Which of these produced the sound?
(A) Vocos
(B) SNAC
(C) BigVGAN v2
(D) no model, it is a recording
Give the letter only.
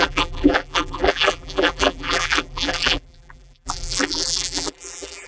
C